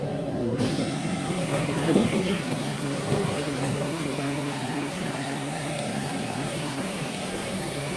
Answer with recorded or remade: remade